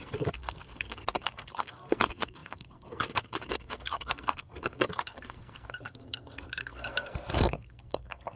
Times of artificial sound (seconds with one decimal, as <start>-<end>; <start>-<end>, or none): 0.0-8.4